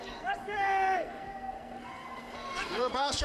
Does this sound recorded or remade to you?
remade